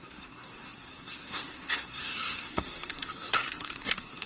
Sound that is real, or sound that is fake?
fake